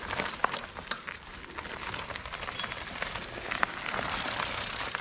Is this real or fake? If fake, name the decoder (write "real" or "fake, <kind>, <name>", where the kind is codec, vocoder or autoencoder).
real